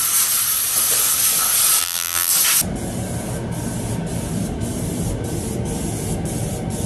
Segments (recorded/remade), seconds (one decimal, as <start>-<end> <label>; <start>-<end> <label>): 0.0-1.8 recorded; 1.8-2.3 remade; 2.3-6.9 recorded